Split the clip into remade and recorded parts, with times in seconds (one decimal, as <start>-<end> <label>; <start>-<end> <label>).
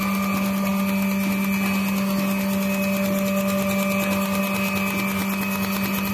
0.0-6.1 recorded